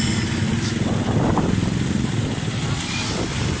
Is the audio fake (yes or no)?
no